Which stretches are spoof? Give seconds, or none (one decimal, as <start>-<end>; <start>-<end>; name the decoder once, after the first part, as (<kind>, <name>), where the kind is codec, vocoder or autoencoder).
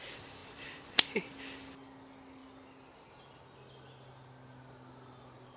0.4-1.4 (vocoder, BigVGAN v2)